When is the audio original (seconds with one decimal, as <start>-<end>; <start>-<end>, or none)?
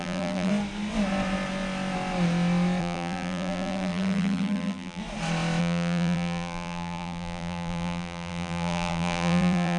0.5-2.8; 5.0-5.6